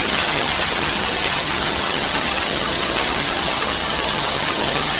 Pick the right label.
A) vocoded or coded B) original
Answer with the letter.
A